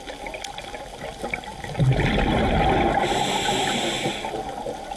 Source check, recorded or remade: recorded